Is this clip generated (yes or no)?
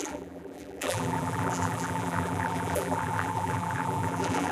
yes